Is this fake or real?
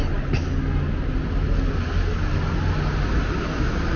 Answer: real